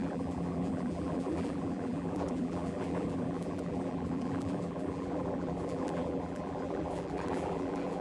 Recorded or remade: remade